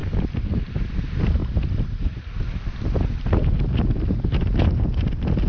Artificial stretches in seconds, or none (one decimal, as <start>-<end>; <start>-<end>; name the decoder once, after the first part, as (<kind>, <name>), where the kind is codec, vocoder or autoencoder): 0.8-1.4 (vocoder, BigVGAN v2); 4.2-5.5